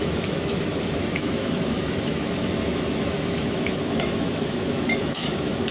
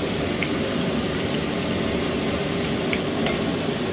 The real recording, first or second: second